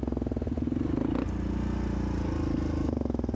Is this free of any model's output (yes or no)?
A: yes